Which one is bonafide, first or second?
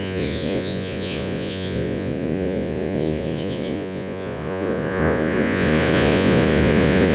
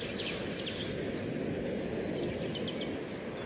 second